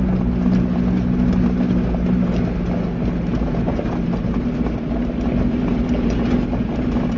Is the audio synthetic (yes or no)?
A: no